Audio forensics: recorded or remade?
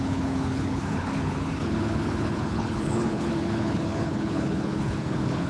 remade